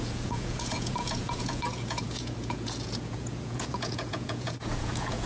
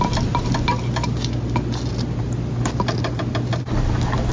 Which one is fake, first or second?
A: first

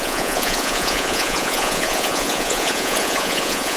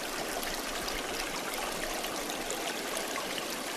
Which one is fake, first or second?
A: first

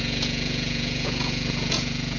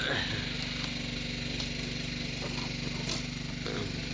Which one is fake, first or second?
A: first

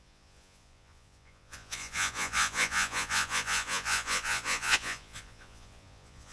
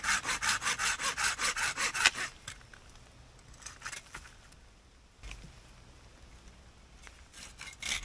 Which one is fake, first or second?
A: first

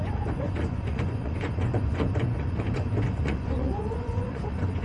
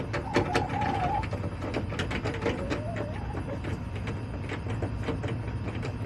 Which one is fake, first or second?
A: first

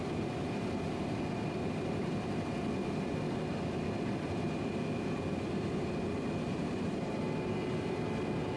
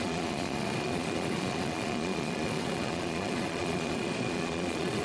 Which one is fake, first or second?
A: second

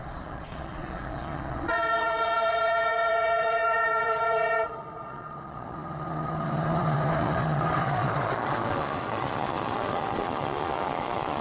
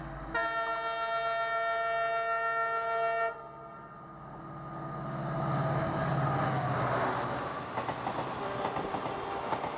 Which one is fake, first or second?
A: first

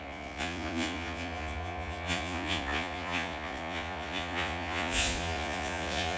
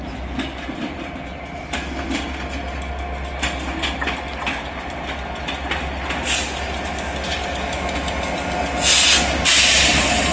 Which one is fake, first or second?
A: first